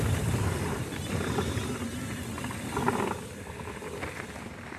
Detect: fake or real real